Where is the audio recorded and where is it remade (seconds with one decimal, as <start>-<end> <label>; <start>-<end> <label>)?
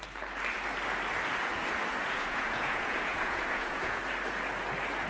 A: 0.0-2.0 recorded; 2.0-4.0 remade; 4.0-5.1 recorded